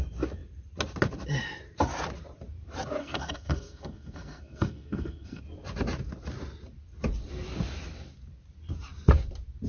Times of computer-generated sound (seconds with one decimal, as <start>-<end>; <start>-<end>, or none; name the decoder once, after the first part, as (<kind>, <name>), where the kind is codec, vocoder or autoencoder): 3.0-5.4 (codec, SNAC)